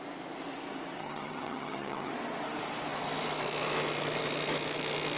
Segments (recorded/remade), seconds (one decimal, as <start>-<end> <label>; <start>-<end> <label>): 0.0-1.0 recorded; 1.0-2.1 remade; 2.1-5.2 recorded